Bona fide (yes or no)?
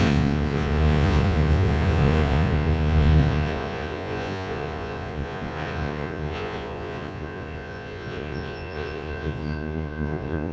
no